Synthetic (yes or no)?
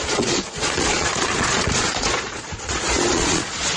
yes